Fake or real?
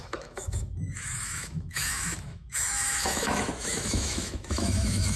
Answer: fake